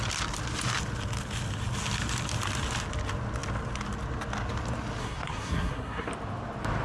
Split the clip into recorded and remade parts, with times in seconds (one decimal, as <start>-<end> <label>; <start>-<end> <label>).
0.0-5.0 recorded; 5.0-6.1 remade; 6.1-6.8 recorded